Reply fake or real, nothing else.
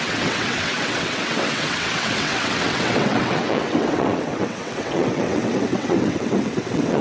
fake